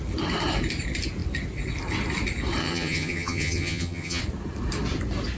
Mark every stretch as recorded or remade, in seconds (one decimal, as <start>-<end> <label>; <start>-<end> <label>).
0.0-2.6 recorded; 2.6-4.2 remade; 4.2-5.4 recorded